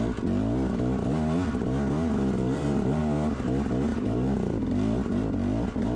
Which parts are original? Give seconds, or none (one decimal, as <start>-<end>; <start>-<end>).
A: 0.0-2.4; 3.0-3.9; 4.6-6.0